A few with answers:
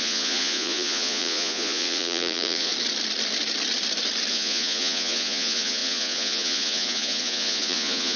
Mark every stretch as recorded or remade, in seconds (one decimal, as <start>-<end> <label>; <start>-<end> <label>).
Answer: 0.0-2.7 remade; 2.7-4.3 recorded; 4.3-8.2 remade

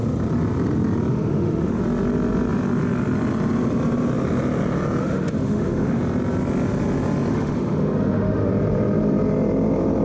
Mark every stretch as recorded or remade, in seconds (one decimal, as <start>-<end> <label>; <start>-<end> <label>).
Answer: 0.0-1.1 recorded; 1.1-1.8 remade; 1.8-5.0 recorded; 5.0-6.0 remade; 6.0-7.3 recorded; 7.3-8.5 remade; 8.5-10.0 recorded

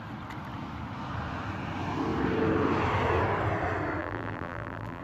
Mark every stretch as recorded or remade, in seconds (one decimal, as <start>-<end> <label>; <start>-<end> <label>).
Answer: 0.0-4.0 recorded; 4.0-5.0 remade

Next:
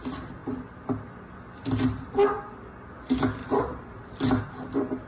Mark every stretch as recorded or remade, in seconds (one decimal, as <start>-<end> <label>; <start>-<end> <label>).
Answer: 0.0-3.4 recorded; 3.4-4.0 remade; 4.0-5.1 recorded

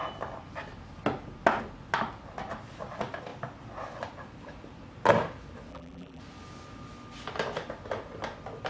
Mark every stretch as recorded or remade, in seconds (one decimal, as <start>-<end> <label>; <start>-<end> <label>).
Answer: 0.0-5.7 recorded; 5.7-6.2 remade; 6.2-8.7 recorded